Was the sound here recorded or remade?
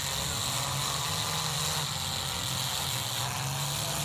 recorded